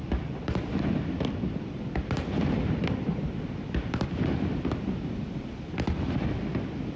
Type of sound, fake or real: fake